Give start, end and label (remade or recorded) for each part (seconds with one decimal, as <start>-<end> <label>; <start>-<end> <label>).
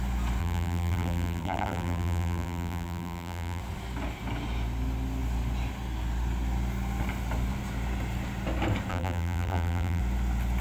0.0-0.4 recorded; 0.4-3.6 remade; 3.6-8.9 recorded; 8.9-10.0 remade; 10.0-10.6 recorded